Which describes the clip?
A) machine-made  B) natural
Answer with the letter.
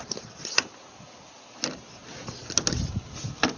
B